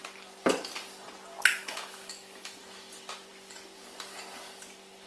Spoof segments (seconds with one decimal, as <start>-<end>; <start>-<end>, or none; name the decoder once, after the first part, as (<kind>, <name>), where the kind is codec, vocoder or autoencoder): 1.6-2.6 (autoencoder, DAC-VAE)